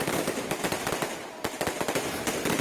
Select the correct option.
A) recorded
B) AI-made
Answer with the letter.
B